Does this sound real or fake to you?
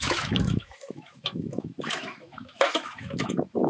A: fake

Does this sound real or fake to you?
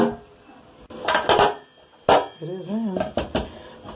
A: real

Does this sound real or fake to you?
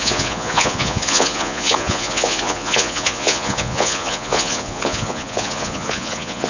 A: fake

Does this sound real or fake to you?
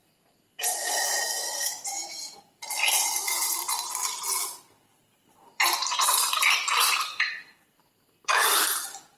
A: real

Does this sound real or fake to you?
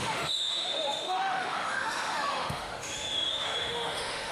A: fake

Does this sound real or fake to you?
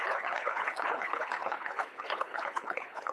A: fake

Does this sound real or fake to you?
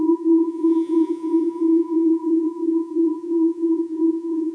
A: fake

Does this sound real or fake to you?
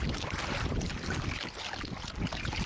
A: real